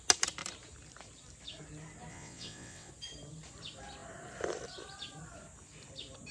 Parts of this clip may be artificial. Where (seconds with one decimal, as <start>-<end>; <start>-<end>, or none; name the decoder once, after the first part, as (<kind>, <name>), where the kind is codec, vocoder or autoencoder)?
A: 2.1-2.9 (vocoder, WaveNeXt)